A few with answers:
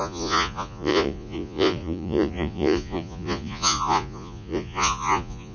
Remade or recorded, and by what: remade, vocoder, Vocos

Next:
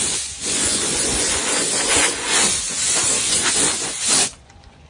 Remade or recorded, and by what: remade, vocoder, Vocos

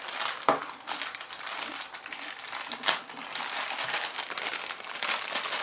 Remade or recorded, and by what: recorded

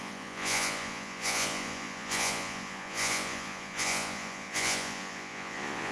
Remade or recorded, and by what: remade, vocoder, Vocos